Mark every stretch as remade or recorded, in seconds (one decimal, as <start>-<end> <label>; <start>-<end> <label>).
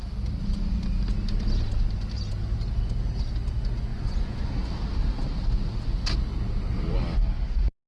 0.0-3.9 recorded; 3.9-4.5 remade; 4.5-7.9 recorded